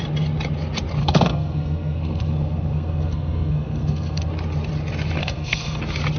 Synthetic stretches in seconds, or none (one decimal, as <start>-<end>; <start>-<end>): 1.0-4.3; 5.2-5.8